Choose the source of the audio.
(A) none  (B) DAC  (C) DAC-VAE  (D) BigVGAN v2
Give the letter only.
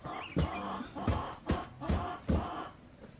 A